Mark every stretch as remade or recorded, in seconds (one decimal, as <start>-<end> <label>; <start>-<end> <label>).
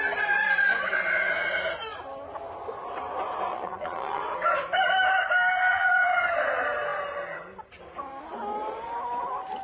0.0-3.5 recorded; 3.5-4.2 remade; 4.2-5.7 recorded; 5.7-6.3 remade; 6.3-9.6 recorded